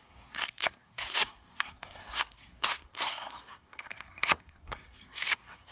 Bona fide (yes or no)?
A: no